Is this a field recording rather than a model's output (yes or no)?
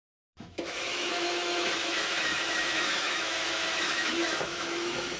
no